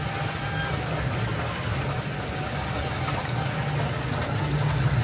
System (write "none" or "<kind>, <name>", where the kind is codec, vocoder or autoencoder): none